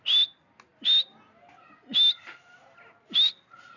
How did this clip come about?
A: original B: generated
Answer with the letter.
A